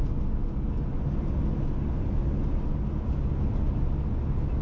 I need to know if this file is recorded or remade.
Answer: recorded